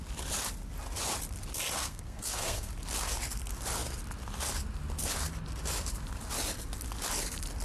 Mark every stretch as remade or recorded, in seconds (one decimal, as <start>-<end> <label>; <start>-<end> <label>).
0.0-1.8 recorded; 1.8-2.7 remade; 2.7-7.6 recorded